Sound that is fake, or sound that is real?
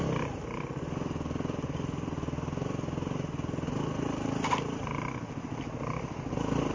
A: real